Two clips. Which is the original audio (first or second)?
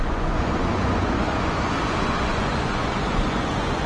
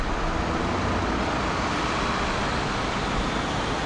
second